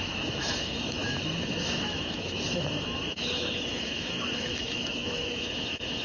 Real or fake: fake